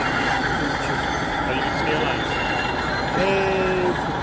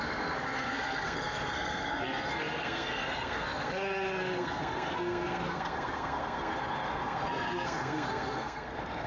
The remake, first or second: second